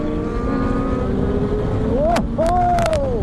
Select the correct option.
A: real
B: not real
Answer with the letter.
A